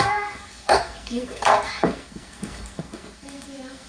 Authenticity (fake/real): fake